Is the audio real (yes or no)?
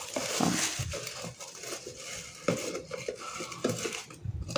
yes